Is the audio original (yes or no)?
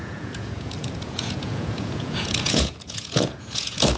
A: no